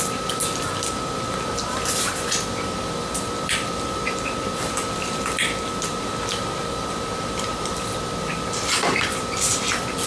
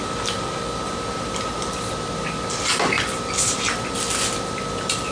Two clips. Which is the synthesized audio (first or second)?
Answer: first